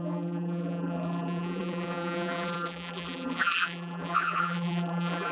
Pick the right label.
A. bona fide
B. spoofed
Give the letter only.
B